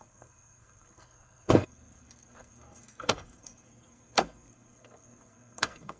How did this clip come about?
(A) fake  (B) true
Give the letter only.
A